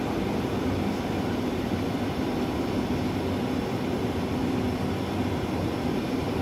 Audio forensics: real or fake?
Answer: fake